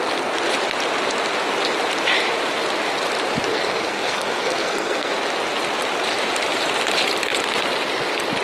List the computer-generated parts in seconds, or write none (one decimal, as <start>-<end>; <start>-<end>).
3.5-5.1